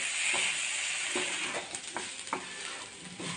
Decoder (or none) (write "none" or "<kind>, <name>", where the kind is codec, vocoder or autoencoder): none